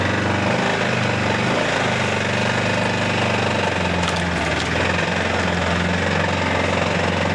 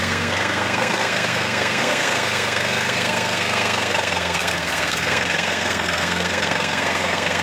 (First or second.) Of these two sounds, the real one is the first